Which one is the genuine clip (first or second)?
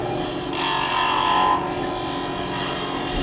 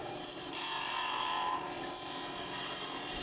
first